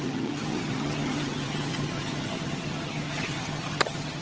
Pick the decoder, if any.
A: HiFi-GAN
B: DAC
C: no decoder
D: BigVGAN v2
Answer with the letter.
A